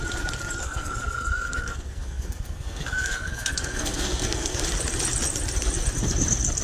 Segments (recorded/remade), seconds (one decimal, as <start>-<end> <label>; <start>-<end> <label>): 0.0-0.6 recorded; 0.6-4.6 remade; 4.6-6.6 recorded